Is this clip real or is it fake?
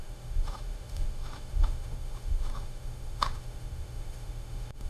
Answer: fake